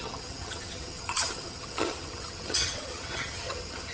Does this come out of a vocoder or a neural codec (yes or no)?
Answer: yes